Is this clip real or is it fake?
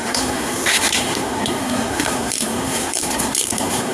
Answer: fake